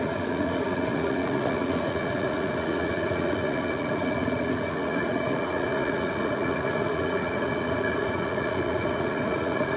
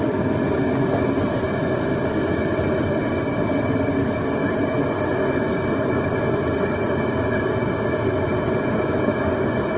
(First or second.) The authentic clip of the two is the second